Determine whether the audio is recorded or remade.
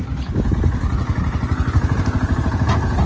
recorded